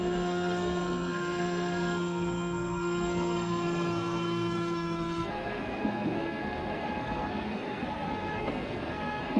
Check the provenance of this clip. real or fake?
fake